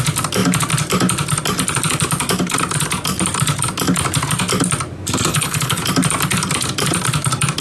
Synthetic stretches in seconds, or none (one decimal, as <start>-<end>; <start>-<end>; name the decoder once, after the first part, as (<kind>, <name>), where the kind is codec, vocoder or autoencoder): 5.3-5.8 (codec, HILCodec)